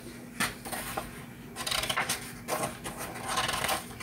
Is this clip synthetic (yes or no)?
no